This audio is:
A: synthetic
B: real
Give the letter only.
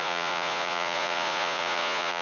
A